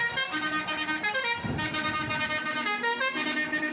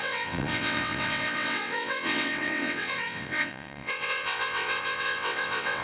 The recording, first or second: first